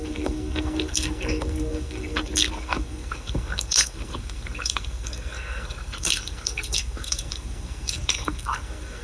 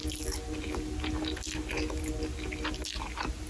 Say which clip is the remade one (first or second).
first